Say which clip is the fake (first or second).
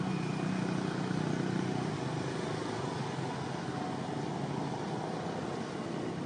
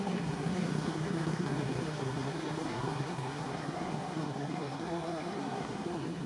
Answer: second